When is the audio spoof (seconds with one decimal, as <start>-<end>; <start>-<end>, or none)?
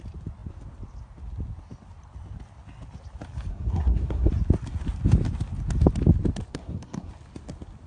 3.5-4.3; 6.5-7.1